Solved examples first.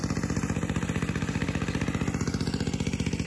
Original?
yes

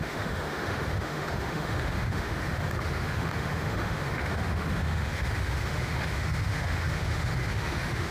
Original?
no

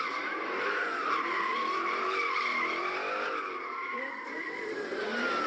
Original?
no